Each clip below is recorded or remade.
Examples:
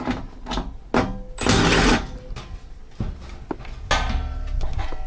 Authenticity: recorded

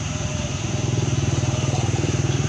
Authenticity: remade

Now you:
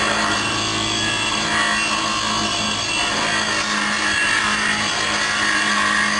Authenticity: recorded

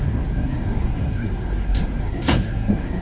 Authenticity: remade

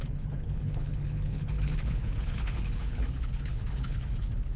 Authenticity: remade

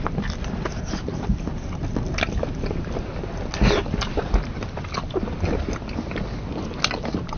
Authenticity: recorded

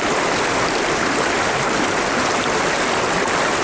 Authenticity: recorded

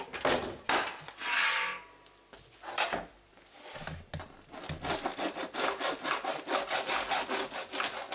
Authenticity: recorded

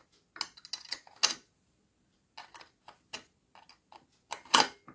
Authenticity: recorded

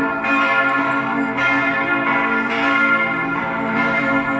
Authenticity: remade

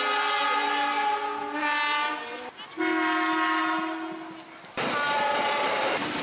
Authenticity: recorded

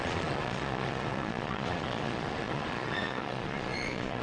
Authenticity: remade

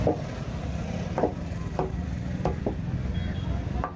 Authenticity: recorded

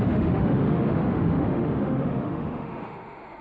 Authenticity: remade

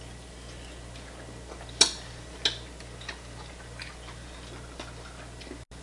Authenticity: recorded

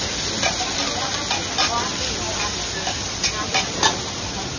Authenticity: recorded